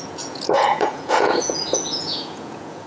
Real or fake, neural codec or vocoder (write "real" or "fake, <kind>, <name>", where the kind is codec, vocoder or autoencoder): fake, vocoder, Vocos